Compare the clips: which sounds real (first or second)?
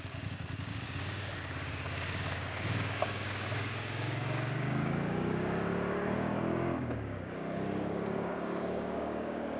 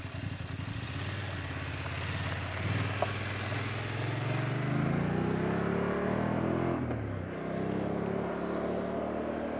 second